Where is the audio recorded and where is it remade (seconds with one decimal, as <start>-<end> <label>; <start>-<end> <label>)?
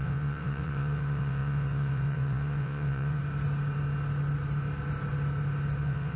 0.0-3.2 remade; 3.2-5.8 recorded; 5.8-6.2 remade